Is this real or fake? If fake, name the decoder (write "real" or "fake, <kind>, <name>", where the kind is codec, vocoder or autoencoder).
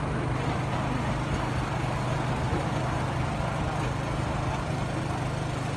real